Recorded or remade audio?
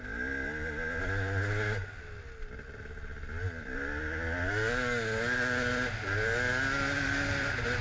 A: recorded